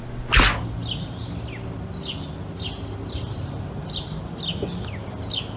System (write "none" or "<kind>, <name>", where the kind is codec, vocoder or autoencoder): none